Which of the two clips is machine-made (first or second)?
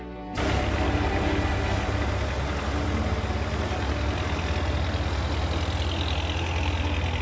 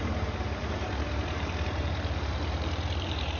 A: second